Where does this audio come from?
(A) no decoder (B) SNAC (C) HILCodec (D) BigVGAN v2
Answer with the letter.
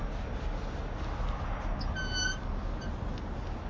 A